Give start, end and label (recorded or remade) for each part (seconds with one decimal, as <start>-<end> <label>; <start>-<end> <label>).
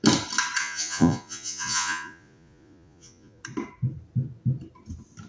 0.0-0.6 recorded; 0.6-3.4 remade; 3.4-5.3 recorded